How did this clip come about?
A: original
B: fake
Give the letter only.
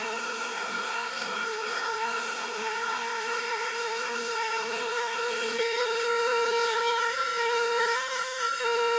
B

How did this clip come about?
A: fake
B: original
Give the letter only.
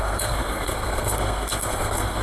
A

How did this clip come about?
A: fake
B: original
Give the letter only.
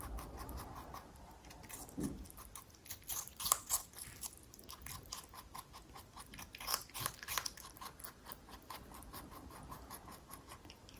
B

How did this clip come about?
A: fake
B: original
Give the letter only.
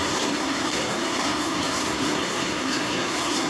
A